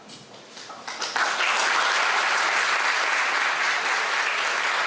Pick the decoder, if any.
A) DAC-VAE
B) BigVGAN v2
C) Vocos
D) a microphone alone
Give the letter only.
D